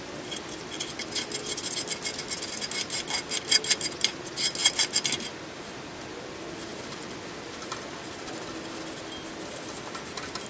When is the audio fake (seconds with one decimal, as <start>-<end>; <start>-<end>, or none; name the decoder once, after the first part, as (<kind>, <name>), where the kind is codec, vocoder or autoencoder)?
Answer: none